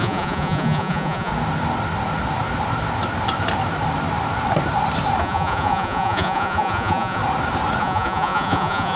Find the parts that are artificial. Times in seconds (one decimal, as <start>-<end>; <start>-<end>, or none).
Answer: 0.0-1.3; 5.2-7.2; 7.8-9.0